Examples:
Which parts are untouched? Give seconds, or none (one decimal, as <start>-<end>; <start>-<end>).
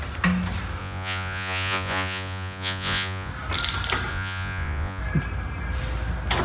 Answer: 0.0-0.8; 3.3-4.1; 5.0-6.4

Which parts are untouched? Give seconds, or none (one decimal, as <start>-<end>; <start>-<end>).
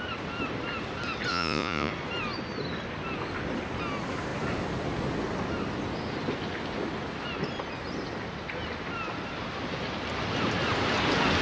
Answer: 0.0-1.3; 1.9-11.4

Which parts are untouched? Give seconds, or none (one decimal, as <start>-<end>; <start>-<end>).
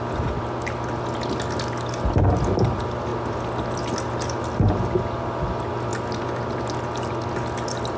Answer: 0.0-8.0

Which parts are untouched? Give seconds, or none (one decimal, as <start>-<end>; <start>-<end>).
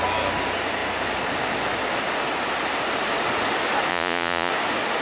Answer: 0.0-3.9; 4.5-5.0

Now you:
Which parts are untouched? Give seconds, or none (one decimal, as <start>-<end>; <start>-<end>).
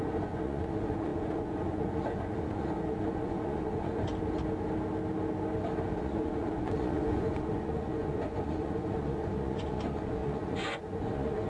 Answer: 4.1-6.0